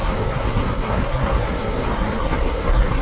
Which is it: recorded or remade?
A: remade